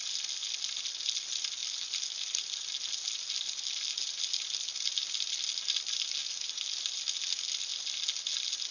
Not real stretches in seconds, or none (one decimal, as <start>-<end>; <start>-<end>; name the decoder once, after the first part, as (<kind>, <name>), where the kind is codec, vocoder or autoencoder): none